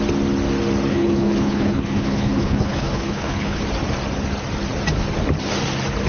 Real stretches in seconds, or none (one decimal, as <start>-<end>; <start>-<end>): 0.0-0.9; 3.6-6.1